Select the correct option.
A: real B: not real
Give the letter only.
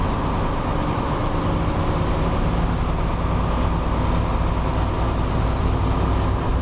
A